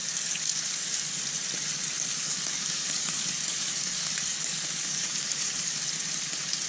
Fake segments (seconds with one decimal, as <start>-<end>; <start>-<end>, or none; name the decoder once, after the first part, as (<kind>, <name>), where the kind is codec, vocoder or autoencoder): 0.0-1.2 (codec, DAC); 2.2-5.8